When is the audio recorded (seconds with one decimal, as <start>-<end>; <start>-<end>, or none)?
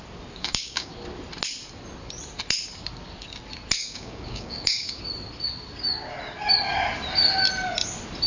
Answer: 0.0-0.4; 0.9-3.8; 5.0-8.3